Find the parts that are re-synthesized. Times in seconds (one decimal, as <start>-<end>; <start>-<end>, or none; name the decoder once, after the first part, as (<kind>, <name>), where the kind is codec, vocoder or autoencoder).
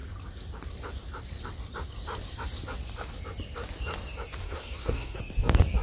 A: 4.4-5.2 (codec, SNAC)